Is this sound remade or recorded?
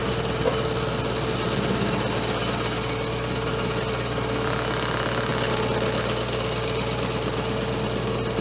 recorded